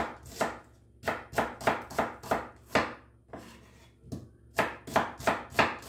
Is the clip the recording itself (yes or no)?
yes